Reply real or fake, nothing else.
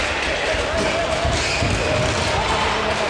real